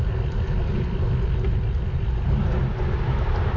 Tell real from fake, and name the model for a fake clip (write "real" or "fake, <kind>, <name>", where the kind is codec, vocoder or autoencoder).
real